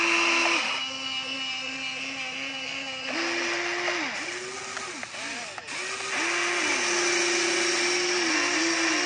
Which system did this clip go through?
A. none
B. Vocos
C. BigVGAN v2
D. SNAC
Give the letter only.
A